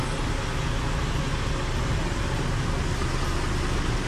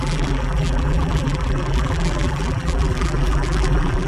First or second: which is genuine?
first